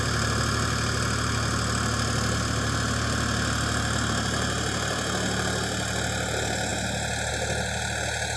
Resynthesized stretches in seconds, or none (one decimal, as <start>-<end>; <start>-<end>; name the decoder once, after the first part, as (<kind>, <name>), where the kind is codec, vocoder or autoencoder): none